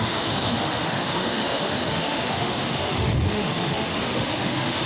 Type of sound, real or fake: fake